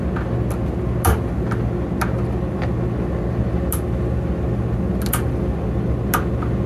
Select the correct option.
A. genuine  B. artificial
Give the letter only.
A